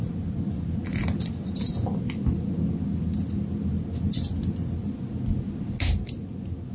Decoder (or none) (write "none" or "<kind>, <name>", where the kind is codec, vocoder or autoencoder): none